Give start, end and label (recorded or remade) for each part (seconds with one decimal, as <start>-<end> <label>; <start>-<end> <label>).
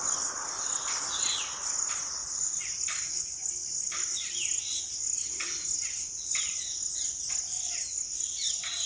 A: 0.0-2.2 recorded; 2.2-2.8 remade; 2.8-8.9 recorded